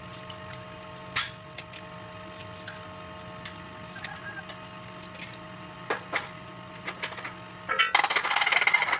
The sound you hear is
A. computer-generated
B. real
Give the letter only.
B